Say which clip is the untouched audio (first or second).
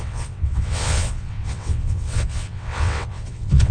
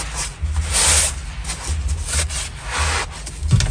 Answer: second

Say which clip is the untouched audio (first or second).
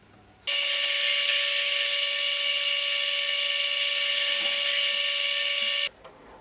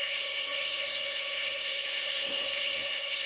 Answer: first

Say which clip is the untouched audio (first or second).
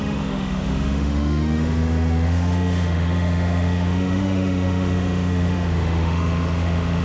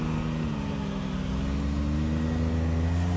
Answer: second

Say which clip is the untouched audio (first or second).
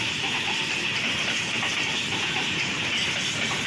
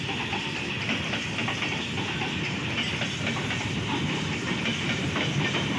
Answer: second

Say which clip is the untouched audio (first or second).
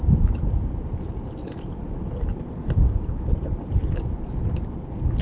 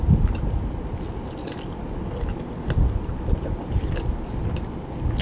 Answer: second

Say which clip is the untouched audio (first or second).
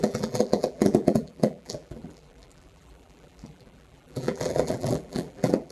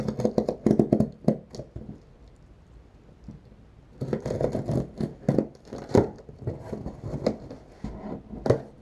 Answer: second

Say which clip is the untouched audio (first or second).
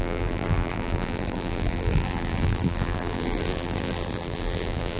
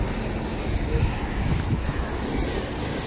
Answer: second